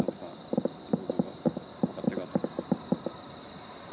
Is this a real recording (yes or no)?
yes